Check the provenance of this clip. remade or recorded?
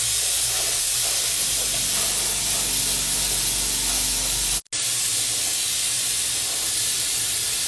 recorded